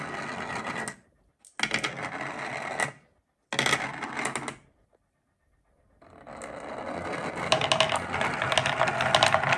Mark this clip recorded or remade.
recorded